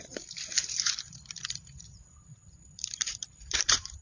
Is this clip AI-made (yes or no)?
yes